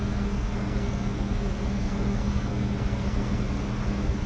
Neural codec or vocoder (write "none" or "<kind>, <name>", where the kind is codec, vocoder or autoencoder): codec, SNAC